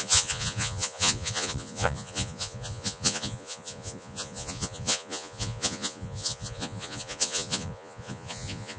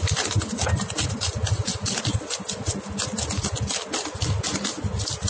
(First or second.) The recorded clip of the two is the second